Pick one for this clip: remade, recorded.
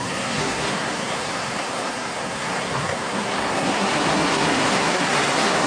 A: remade